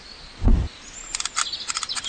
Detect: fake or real real